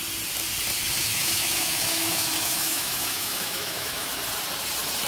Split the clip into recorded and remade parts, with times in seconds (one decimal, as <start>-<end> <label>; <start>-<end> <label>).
0.0-1.0 recorded; 1.0-4.1 remade; 4.1-5.1 recorded